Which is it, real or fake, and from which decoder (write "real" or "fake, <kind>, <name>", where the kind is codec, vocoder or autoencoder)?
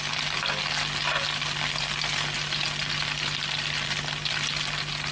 real